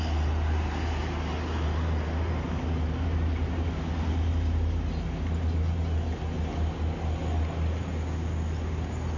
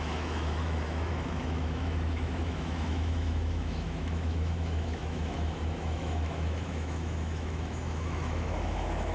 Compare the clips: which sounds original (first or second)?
first